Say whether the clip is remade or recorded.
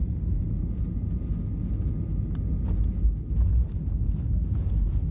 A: recorded